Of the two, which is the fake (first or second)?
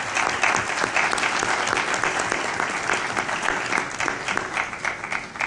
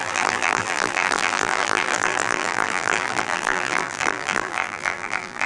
second